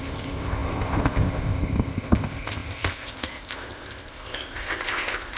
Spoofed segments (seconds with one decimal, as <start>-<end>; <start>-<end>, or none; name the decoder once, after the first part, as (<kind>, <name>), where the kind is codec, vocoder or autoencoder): 0.0-5.4 (codec, ZipCodec)